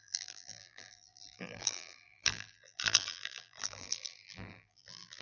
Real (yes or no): no